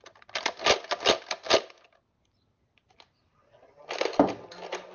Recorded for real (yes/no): yes